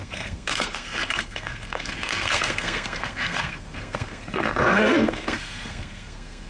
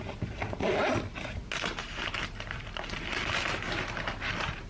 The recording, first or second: second